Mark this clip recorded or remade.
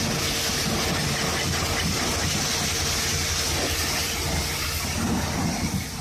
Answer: recorded